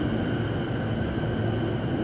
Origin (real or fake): real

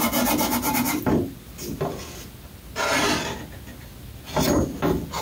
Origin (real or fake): real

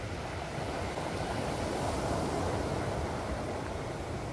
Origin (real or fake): real